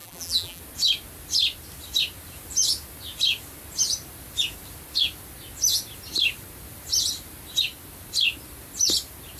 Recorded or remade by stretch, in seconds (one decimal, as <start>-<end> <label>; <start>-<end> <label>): 0.0-0.6 remade; 0.6-9.4 recorded